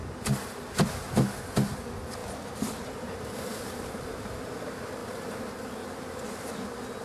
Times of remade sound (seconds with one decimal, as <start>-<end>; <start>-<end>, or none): none